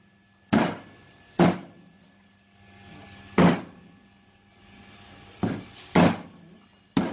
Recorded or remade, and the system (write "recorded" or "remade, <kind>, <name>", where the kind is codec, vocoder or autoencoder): recorded